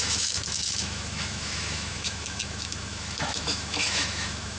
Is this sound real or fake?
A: fake